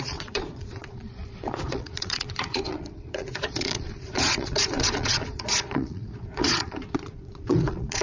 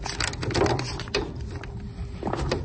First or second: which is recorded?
second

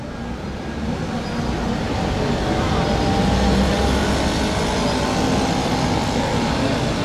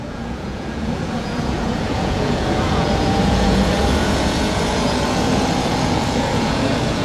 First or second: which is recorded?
first